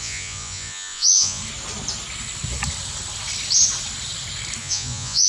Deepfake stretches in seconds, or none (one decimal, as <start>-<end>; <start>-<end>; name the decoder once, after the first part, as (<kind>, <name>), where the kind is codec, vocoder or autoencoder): 0.0-1.4 (vocoder, Vocos); 4.6-5.3